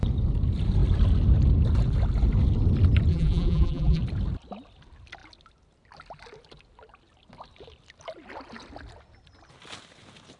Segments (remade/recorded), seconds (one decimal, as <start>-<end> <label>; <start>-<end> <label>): 0.0-3.1 recorded; 3.1-4.0 remade; 4.0-10.4 recorded